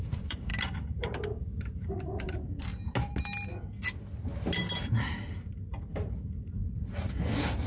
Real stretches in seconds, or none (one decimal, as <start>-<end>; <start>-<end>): 2.7-5.3; 6.6-7.7